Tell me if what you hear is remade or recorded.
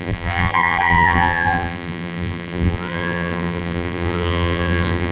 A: remade